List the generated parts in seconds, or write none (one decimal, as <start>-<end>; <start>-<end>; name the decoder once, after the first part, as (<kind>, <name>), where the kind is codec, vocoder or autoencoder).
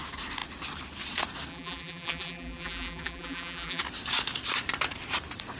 1.5-3.8 (vocoder, BigVGAN v2)